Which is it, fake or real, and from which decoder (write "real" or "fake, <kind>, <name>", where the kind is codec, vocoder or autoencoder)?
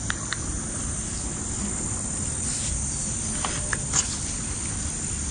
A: real